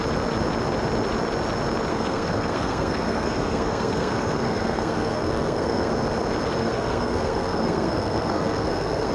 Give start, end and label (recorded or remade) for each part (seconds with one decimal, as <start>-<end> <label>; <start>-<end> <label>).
0.0-1.9 recorded; 1.9-5.9 remade; 5.9-6.6 recorded; 6.6-9.1 remade